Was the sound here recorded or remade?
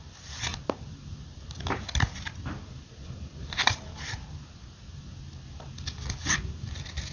recorded